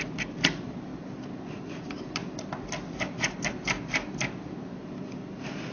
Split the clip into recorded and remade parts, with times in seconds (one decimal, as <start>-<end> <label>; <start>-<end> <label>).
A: 0.0-0.9 remade; 0.9-1.5 recorded; 1.5-2.2 remade; 2.2-3.2 recorded; 3.2-4.8 remade; 4.8-5.7 recorded

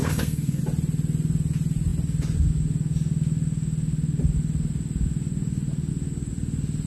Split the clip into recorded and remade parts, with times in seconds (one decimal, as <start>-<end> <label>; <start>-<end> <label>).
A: 0.0-0.6 remade; 0.6-6.9 recorded

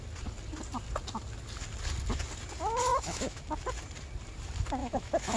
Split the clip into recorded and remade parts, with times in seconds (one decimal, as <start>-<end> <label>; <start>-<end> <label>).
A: 0.0-2.9 recorded; 2.9-3.4 remade; 3.4-4.8 recorded; 4.8-5.4 remade

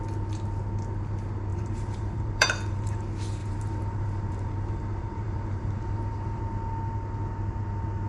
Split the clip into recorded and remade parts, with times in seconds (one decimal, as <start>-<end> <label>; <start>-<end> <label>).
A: 0.0-1.5 recorded; 1.5-3.0 remade; 3.0-3.4 recorded; 3.4-6.4 remade; 6.4-8.1 recorded

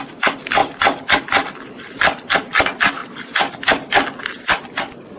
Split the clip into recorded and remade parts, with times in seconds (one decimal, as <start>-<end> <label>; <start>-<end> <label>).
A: 0.0-5.2 recorded

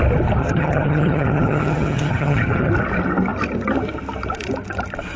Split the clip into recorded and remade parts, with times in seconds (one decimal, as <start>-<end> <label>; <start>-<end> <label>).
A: 0.0-0.4 recorded; 0.4-2.7 remade; 2.7-5.2 recorded

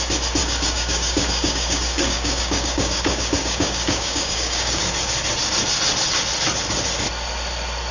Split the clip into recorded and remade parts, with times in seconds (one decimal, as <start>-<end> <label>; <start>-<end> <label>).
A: 0.0-0.4 recorded; 0.4-4.8 remade; 4.8-7.9 recorded

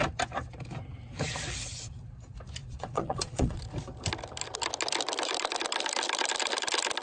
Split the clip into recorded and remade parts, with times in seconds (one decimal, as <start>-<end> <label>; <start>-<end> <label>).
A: 0.0-2.6 recorded; 2.6-3.6 remade; 3.6-7.0 recorded